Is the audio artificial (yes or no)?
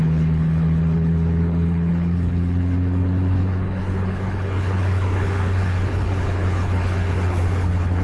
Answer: yes